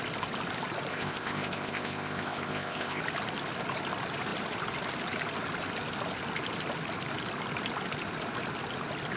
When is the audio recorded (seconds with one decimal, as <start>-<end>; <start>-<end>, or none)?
0.0-0.9; 3.0-9.2